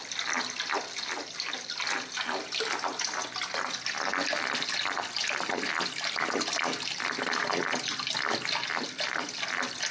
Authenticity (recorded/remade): recorded